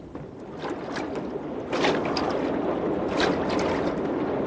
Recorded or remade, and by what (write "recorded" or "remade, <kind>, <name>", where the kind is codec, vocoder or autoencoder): recorded